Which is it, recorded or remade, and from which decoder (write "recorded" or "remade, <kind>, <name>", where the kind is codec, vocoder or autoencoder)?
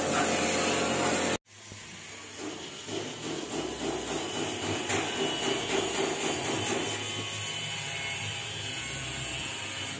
recorded